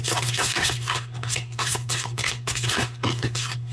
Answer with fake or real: fake